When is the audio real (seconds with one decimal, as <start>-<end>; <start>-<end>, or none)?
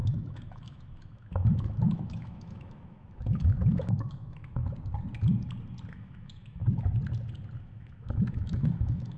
4.6-5.9; 6.6-7.6